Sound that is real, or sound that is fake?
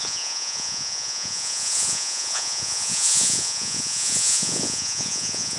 fake